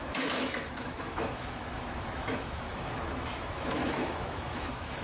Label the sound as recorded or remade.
remade